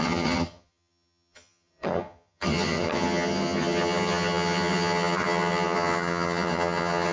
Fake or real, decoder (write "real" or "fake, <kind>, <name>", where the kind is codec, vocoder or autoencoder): fake, vocoder, HiFi-GAN